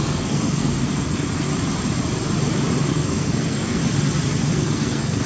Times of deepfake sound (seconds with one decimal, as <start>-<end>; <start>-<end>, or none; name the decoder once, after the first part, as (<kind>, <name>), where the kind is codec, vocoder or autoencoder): 0.0-1.5 (codec, SNAC); 2.9-3.8; 4.5-5.3